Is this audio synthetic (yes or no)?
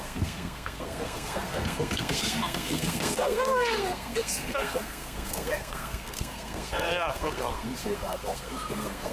yes